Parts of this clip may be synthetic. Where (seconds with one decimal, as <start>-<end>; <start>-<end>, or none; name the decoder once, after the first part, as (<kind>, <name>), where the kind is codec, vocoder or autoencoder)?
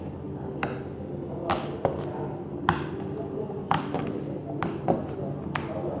none